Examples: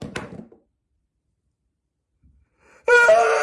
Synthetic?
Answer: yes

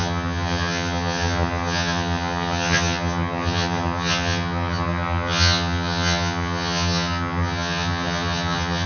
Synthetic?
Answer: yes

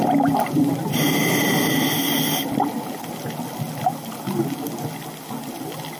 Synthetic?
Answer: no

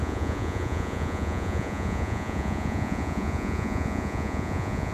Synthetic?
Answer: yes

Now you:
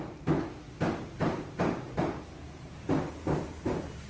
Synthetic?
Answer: no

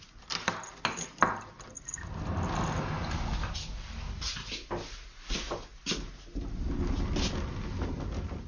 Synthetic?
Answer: no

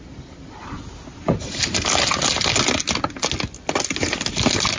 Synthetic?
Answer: no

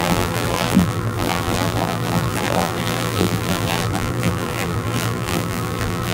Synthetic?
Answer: yes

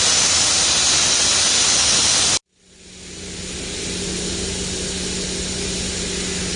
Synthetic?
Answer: no